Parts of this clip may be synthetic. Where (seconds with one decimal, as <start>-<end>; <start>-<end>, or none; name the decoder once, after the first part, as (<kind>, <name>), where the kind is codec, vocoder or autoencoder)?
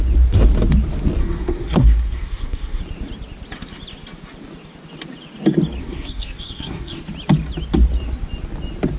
1.2-2.8 (codec, SNAC); 5.8-7.0